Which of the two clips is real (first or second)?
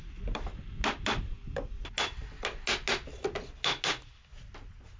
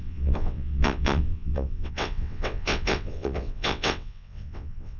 first